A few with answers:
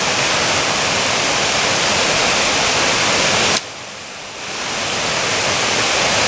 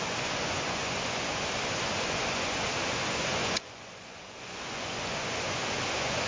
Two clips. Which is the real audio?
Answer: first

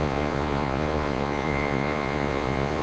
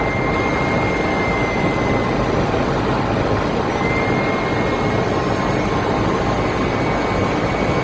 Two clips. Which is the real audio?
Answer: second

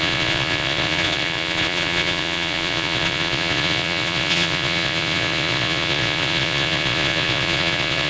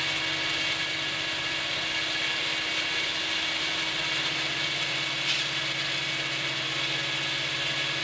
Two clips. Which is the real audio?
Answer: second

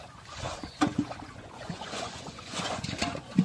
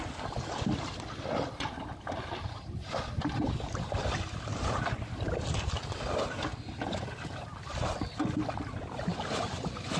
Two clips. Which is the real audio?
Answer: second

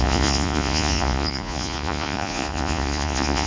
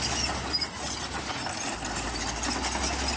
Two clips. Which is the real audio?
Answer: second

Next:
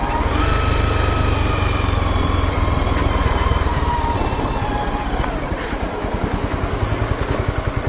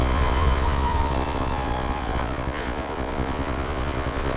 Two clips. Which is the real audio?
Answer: first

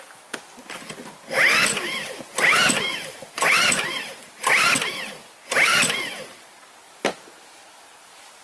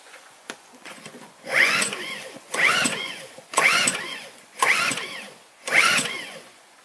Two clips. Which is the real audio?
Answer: first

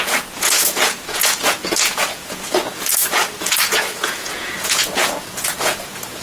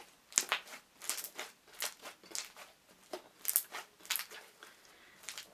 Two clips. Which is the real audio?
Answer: second